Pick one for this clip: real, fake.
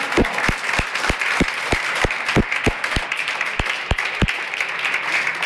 real